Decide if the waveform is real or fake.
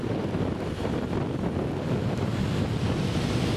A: real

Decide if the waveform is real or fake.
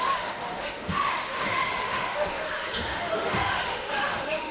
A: fake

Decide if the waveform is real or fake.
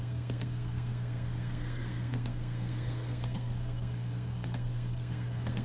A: fake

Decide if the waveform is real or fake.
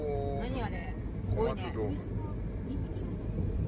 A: real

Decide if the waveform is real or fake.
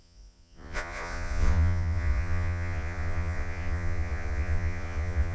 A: fake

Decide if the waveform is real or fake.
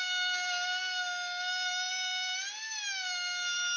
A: real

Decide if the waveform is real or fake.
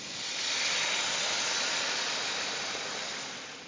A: real